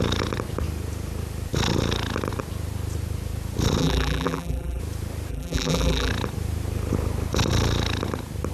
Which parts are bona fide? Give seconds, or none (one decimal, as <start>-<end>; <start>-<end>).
0.0-3.8; 4.8-5.3; 6.1-8.5